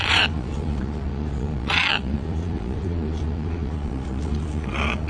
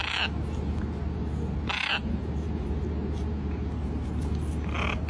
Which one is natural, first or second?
second